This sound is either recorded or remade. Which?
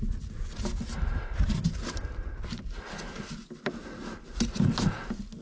recorded